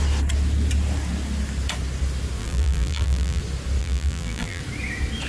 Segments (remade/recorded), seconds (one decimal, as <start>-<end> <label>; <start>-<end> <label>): 0.0-2.4 recorded; 2.4-3.4 remade; 3.4-3.8 recorded; 3.8-4.6 remade; 4.6-5.3 recorded

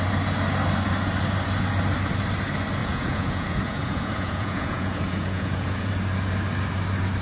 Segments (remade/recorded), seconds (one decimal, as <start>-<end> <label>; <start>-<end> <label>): 0.0-2.8 recorded; 2.8-5.9 remade; 5.9-7.2 recorded

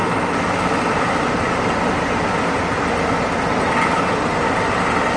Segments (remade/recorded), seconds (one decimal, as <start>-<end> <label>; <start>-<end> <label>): 0.0-5.2 recorded

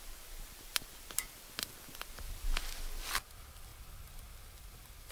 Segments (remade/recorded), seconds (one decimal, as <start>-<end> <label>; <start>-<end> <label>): 0.0-5.1 recorded